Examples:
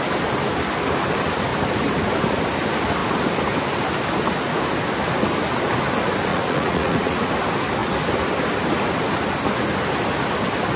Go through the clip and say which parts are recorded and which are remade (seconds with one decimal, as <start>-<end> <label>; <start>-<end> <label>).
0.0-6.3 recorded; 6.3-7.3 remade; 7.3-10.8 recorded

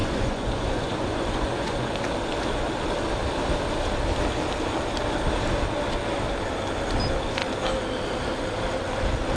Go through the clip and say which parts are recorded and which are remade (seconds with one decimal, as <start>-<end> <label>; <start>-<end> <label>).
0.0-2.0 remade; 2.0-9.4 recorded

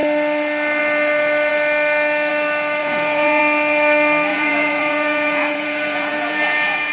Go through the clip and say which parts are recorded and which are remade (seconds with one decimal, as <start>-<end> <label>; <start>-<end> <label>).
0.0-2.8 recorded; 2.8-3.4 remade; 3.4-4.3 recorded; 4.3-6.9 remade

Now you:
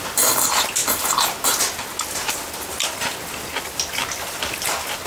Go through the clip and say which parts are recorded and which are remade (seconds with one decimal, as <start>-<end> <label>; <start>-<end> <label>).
0.0-5.1 recorded

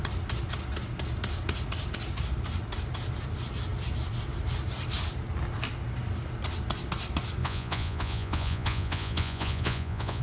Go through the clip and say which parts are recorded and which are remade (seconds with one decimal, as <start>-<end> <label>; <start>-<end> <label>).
0.0-7.4 recorded; 7.4-10.2 remade

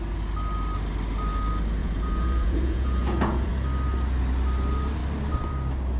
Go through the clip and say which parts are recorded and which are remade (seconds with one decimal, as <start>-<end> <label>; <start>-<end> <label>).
0.0-1.8 recorded; 1.8-3.5 remade; 3.5-6.0 recorded

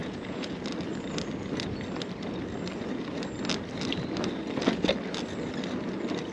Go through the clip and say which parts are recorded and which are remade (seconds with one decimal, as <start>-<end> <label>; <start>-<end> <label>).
0.0-0.5 remade; 0.5-6.3 recorded

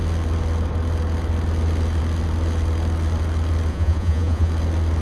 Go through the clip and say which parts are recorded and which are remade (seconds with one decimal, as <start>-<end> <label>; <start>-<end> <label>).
0.0-3.7 recorded; 3.7-4.5 remade; 4.5-5.0 recorded